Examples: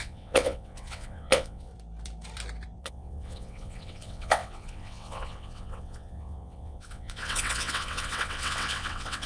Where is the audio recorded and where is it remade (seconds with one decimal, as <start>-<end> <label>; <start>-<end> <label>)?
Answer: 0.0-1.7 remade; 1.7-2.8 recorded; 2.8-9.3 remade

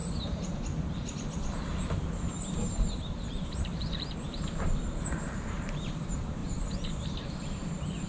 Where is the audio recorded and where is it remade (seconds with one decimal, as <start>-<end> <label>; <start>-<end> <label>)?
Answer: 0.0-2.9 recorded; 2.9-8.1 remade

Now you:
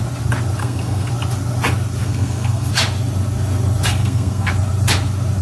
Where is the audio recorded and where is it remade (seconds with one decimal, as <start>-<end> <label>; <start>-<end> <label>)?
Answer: 0.0-0.6 recorded; 0.6-1.1 remade; 1.1-2.0 recorded; 2.0-2.7 remade; 2.7-3.9 recorded; 3.9-4.5 remade; 4.5-5.4 recorded

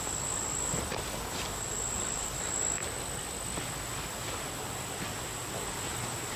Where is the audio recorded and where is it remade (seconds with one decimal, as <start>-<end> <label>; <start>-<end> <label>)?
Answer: 0.0-2.8 remade; 2.8-5.5 recorded; 5.5-6.4 remade

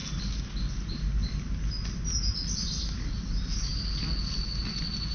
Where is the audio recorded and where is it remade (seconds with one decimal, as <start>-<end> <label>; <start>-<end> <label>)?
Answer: 0.0-5.1 recorded

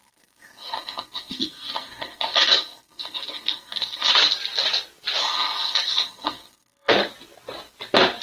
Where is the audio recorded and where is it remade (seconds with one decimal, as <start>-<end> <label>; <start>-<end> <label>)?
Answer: 0.0-4.1 remade; 4.1-5.2 recorded; 5.2-6.9 remade; 6.9-8.2 recorded

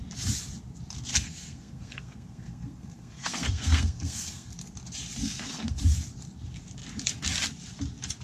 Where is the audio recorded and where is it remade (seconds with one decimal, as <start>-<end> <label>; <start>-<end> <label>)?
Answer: 0.0-1.1 recorded; 1.1-4.5 remade; 4.5-5.2 recorded; 5.2-5.8 remade; 5.8-8.2 recorded